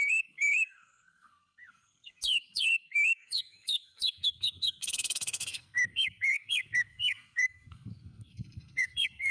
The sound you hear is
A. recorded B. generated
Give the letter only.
B